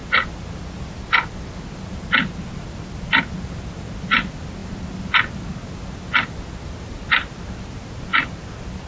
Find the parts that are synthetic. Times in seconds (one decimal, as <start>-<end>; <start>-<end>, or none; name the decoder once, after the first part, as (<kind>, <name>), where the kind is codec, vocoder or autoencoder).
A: none